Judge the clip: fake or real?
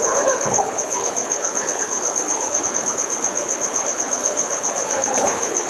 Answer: fake